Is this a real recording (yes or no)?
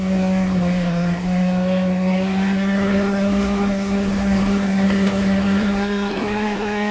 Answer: no